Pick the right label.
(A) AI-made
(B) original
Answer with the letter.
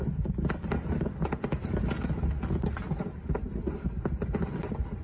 B